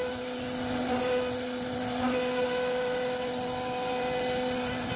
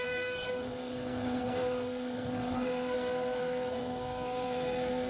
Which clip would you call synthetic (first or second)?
second